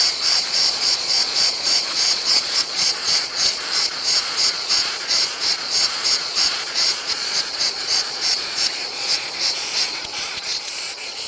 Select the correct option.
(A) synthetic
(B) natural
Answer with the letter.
A